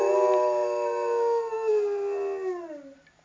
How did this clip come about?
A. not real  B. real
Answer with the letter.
B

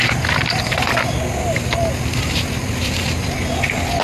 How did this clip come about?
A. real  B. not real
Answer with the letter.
A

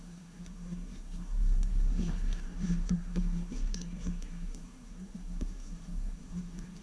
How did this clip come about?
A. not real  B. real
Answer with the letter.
A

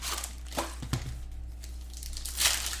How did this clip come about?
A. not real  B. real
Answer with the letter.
B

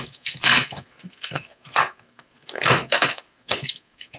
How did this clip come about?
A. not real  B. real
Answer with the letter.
A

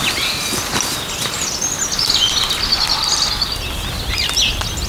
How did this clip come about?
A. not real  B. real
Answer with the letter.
B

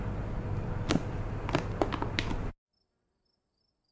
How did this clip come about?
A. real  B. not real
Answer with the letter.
A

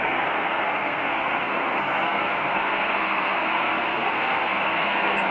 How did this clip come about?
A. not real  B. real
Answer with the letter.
A